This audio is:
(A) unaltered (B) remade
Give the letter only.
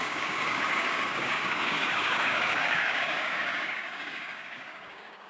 B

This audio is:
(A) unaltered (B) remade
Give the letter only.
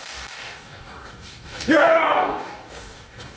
B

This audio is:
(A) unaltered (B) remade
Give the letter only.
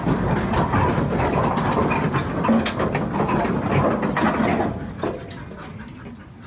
A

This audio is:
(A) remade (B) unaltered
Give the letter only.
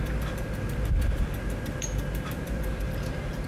B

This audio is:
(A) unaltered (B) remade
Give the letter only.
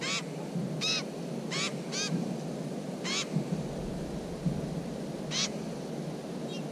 A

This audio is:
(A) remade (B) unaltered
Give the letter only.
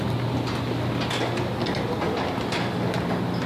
B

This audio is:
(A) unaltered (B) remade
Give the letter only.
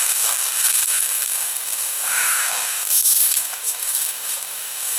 B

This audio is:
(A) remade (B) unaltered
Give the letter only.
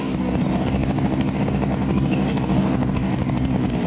A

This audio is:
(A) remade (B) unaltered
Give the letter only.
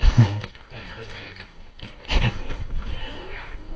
A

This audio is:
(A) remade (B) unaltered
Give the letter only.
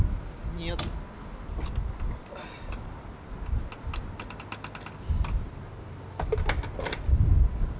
B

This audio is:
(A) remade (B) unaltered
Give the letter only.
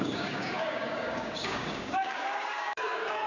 A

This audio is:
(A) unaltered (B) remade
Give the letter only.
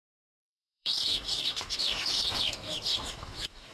B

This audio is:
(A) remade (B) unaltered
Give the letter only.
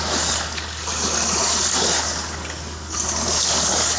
A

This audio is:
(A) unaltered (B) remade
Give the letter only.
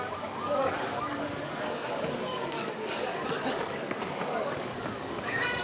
B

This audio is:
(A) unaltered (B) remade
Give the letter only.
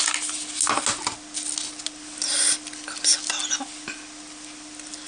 A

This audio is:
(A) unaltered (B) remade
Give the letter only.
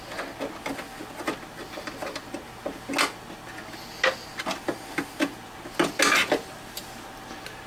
A